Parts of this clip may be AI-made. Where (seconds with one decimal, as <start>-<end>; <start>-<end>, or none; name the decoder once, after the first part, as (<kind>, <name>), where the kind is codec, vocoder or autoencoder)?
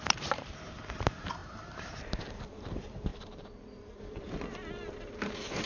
0.0-5.7 (vocoder, BigVGAN v2)